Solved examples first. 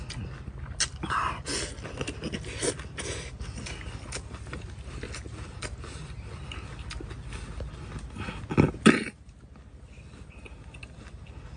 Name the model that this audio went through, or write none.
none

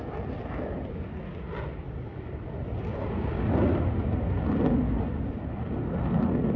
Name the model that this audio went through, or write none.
none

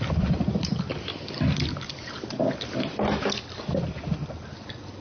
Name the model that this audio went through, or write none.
none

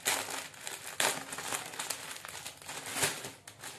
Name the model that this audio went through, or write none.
none